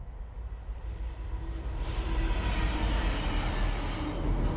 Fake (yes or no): no